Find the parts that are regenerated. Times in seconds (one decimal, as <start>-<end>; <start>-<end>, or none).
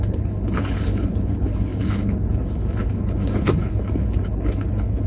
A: 0.0-5.1